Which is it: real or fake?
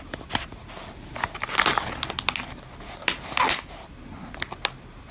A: real